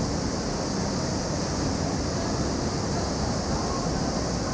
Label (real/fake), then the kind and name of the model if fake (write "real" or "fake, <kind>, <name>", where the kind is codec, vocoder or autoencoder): real